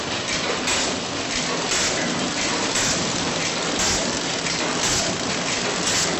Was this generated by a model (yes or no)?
no